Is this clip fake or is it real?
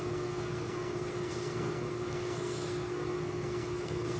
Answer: fake